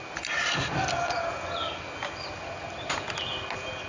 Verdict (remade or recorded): recorded